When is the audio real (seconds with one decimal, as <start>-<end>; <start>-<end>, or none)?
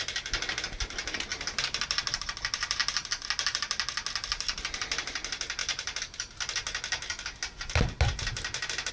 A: 0.0-8.9